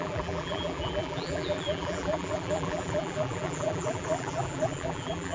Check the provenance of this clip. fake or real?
fake